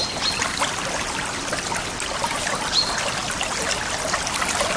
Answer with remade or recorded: recorded